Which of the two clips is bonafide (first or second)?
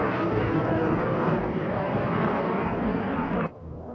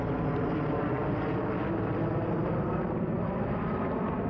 second